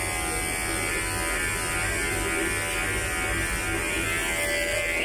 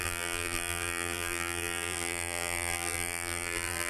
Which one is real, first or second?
first